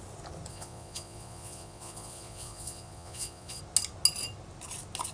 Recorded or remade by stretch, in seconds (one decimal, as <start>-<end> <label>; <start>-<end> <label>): 0.0-0.5 recorded; 0.5-3.6 remade; 3.6-5.1 recorded